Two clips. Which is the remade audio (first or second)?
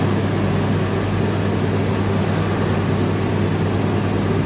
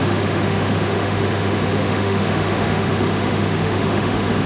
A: second